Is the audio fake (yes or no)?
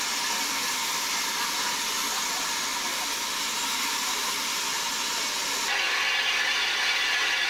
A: no